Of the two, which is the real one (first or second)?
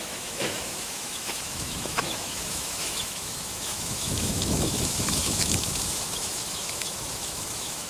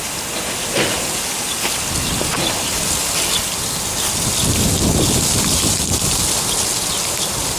second